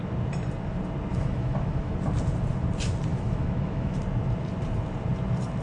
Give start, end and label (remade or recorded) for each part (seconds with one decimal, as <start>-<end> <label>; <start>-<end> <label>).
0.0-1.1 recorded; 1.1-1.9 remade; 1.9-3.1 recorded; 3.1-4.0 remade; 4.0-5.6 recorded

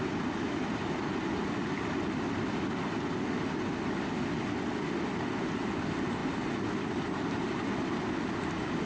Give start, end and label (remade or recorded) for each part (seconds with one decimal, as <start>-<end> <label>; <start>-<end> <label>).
0.0-8.9 recorded

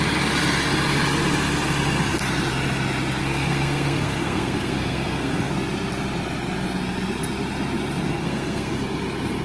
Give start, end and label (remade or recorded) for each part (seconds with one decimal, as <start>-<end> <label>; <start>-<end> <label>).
0.0-3.2 recorded; 3.2-5.5 remade; 5.5-8.2 recorded; 8.2-8.7 remade; 8.7-9.4 recorded

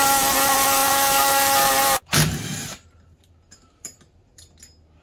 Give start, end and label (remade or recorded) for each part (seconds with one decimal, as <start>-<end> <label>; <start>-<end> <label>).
0.0-5.0 recorded